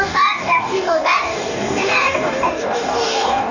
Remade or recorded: remade